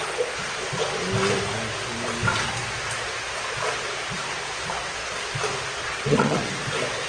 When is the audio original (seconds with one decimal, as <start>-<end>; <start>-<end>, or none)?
0.0-5.8; 6.5-7.1